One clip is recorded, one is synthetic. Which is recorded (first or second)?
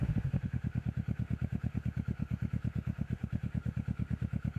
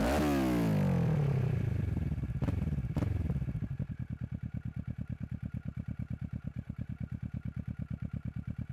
second